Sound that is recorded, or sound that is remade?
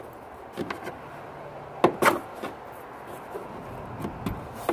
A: recorded